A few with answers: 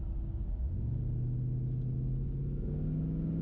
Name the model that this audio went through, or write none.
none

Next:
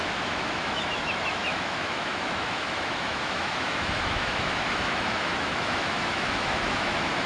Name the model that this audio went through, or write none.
autoencoder, DAC-VAE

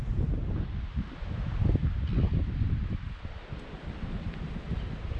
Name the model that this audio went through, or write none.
none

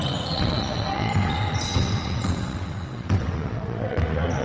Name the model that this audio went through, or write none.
vocoder, WaveNeXt